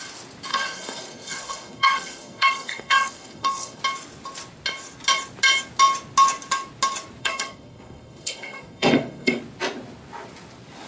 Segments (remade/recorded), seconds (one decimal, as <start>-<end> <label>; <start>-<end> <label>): 0.0-0.5 recorded; 0.5-3.8 remade; 3.8-7.2 recorded; 7.2-9.4 remade; 9.4-10.9 recorded